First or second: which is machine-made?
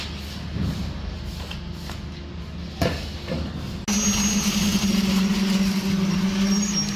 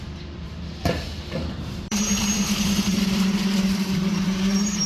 second